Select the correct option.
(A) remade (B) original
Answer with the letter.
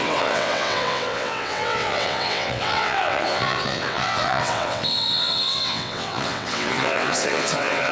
A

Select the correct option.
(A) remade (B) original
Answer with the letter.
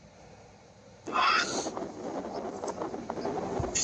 B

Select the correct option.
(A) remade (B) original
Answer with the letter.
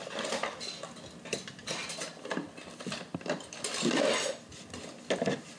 B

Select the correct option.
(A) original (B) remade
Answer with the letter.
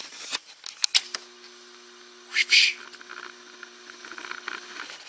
A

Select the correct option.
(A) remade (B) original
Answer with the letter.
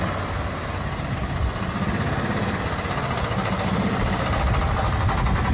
B